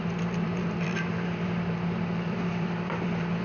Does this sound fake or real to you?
fake